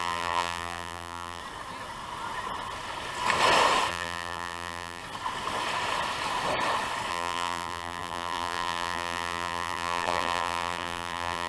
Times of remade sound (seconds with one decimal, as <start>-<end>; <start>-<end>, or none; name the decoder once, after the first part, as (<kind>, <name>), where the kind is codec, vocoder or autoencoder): 0.0-1.4 (vocoder, BigVGAN v2); 3.9-5.0; 7.1-11.5